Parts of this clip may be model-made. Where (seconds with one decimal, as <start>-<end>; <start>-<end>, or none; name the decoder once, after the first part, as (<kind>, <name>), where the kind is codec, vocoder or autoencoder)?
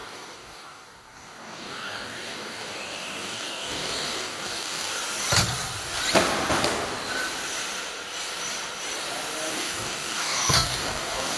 0.0-5.0 (codec, DAC); 9.5-11.4